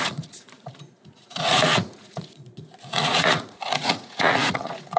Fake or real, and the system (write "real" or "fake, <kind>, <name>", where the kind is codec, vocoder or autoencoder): fake, vocoder, Vocos